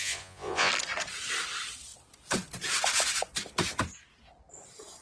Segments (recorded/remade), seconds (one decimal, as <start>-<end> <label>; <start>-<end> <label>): 0.0-0.7 remade; 0.7-5.0 recorded